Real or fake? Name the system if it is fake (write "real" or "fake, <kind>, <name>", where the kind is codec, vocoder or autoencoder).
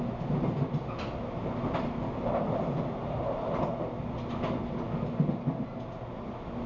real